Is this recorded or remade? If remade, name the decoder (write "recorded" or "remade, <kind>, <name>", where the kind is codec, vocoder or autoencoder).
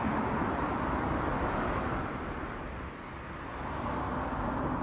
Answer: recorded